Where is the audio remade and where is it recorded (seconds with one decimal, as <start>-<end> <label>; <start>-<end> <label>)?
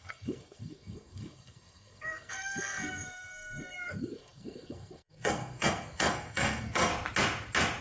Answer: 0.0-6.9 remade; 6.9-7.8 recorded